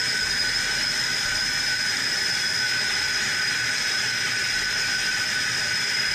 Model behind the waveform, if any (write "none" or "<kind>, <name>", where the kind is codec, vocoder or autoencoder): vocoder, BigVGAN v2